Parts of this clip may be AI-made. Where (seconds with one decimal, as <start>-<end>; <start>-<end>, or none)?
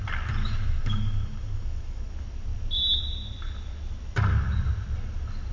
0.4-2.1